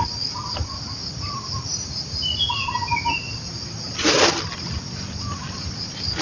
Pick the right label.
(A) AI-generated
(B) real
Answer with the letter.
B